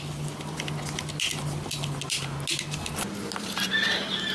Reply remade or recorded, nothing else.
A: recorded